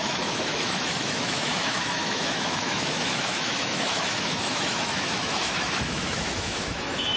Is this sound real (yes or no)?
no